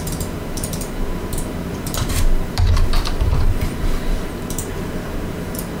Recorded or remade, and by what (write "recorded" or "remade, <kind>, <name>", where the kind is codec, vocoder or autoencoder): remade, vocoder, BigVGAN v2